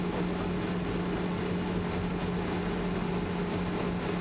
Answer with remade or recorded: recorded